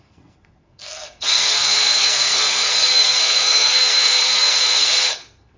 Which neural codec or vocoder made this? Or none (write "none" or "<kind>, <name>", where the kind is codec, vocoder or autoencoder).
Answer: codec, SNAC